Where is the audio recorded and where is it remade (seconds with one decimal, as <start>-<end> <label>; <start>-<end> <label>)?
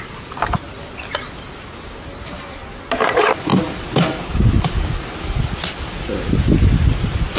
0.0-7.4 recorded